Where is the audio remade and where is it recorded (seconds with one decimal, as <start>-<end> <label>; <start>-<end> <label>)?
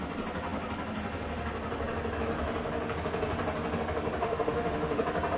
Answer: 0.0-4.2 recorded; 4.2-5.0 remade; 5.0-5.4 recorded